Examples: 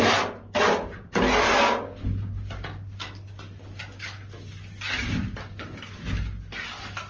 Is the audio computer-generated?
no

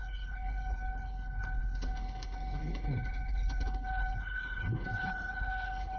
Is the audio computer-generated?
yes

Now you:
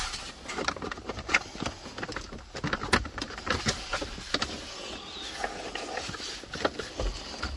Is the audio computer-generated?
no